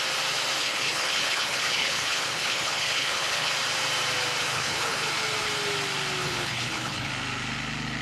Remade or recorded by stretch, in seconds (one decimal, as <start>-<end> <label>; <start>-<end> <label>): 0.0-0.6 recorded; 0.6-3.5 remade; 3.5-4.4 recorded; 4.4-5.1 remade; 5.1-6.2 recorded; 6.2-7.1 remade; 7.1-8.0 recorded